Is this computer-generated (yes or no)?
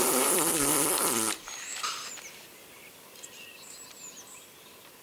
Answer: no